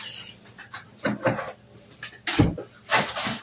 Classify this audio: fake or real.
fake